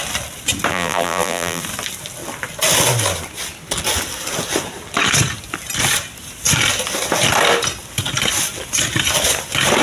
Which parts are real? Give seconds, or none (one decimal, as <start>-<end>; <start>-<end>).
0.0-0.7; 1.6-9.8